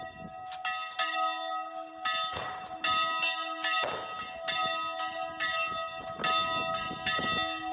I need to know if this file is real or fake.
real